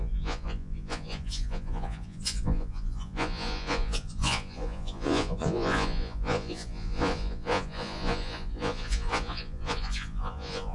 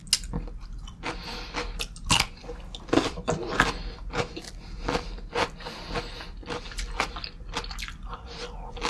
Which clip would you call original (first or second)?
second